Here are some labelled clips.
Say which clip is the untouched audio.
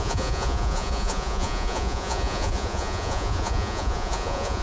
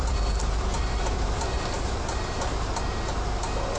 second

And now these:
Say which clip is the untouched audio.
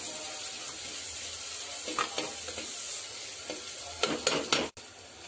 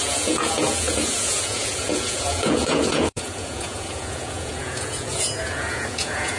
first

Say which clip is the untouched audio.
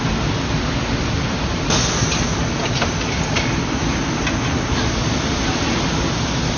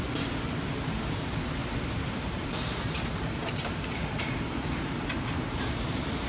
first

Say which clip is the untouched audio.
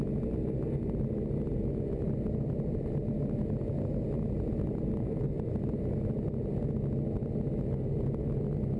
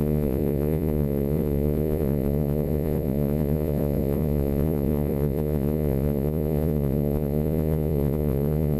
first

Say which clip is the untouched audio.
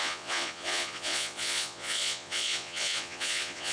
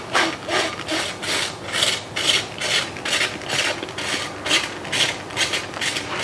second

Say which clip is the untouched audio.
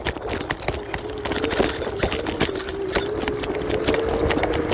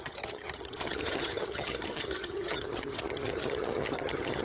first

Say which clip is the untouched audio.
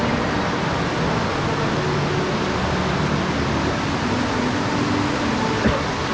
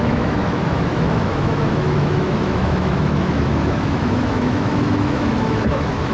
first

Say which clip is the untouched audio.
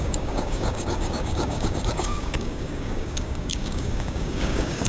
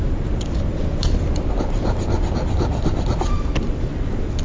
second